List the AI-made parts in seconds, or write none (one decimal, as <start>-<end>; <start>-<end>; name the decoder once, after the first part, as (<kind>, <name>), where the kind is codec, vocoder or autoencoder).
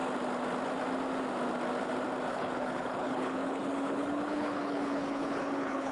2.3-5.9 (codec, HILCodec)